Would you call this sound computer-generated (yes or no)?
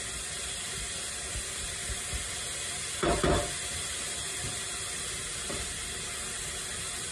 no